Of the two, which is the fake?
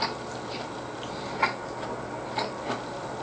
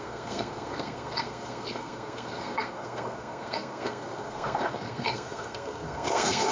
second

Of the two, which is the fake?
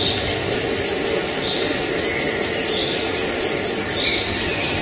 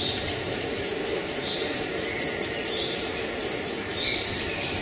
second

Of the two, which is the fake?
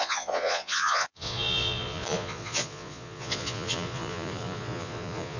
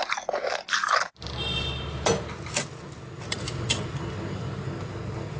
first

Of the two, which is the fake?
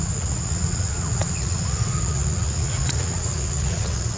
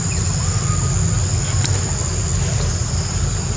first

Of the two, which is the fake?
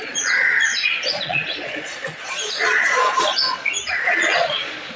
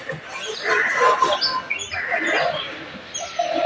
first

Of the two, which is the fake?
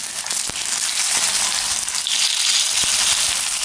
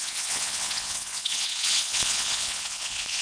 second